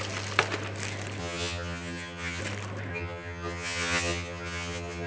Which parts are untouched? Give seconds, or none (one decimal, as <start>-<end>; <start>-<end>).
0.0-1.2; 2.4-2.9